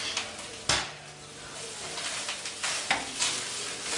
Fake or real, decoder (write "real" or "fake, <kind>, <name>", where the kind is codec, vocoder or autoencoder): real